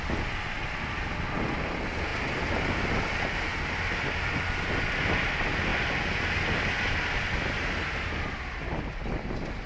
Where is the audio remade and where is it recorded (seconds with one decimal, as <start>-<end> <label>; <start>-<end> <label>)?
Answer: 0.0-9.7 recorded